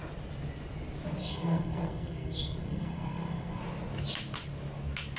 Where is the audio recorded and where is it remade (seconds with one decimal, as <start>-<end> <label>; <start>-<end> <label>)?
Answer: 0.0-1.2 recorded; 1.2-3.6 remade; 3.6-5.2 recorded